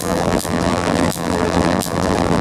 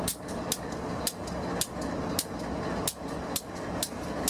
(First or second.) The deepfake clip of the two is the first